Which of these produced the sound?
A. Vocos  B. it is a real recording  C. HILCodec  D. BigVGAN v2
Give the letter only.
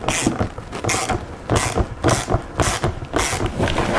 B